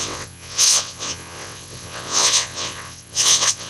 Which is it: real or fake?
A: fake